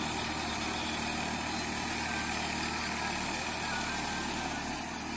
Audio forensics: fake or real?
real